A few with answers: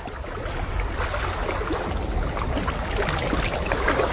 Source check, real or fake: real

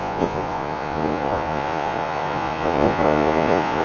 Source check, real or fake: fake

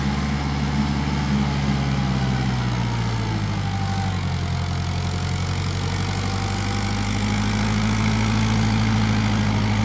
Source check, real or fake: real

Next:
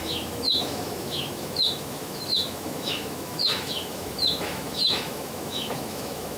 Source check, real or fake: fake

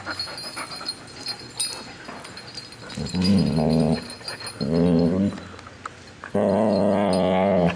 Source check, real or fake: real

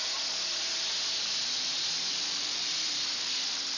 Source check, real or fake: real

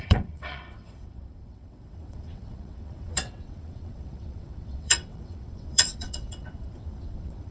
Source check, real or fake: fake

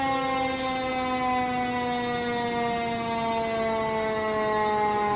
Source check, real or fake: real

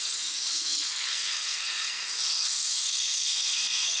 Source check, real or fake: fake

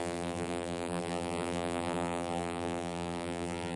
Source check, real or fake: fake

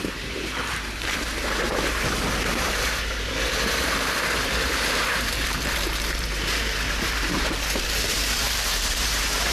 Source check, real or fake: fake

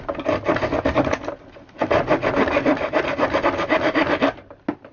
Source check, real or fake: real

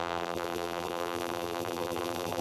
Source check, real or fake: fake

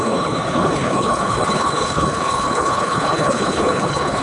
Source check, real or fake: fake